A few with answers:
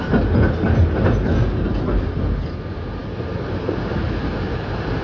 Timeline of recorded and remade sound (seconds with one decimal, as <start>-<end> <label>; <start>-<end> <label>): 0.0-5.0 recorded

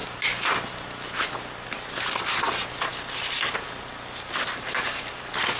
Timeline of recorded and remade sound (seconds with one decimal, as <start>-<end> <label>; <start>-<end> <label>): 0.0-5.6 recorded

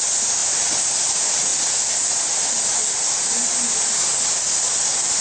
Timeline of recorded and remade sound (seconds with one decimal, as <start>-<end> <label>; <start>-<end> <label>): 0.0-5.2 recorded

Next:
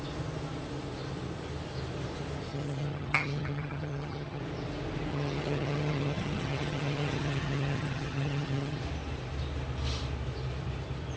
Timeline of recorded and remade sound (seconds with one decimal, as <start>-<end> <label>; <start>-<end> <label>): 0.0-2.5 recorded; 2.5-4.4 remade; 4.4-5.1 recorded; 5.1-8.8 remade; 8.8-11.2 recorded